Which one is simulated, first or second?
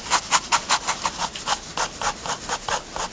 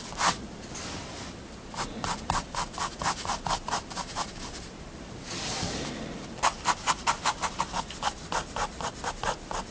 second